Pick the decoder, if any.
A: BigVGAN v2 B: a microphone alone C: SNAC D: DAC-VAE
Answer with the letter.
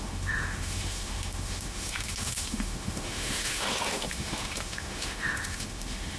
D